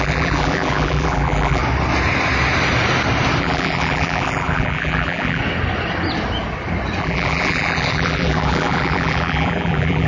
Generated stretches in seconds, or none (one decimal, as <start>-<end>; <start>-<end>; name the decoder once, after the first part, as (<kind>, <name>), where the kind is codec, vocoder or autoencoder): 0.0-1.6 (vocoder, BigVGAN v2); 3.4-5.4; 7.0-10.1

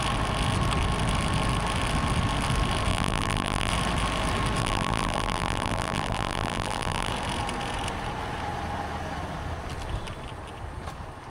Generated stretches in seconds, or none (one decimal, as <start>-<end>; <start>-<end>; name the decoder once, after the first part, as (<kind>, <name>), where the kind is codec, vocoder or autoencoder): 2.9-3.7 (vocoder, BigVGAN v2); 4.6-7.1